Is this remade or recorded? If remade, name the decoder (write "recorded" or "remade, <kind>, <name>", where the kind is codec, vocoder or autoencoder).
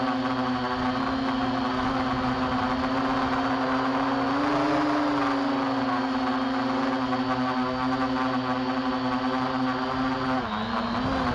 recorded